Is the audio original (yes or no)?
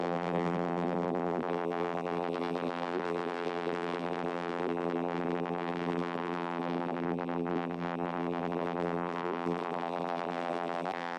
no